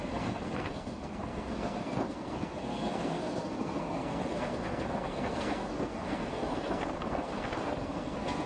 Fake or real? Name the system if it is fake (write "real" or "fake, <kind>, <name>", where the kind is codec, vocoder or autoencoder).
fake, codec, SNAC